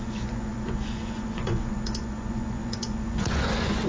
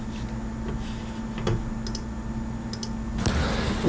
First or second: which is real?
second